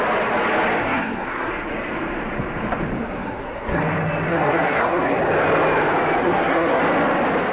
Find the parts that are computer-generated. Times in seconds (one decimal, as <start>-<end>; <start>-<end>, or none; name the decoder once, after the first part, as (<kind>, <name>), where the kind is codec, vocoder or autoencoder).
0.8-1.5 (codec, SNAC); 3.0-3.8; 4.3-5.2; 6.2-6.8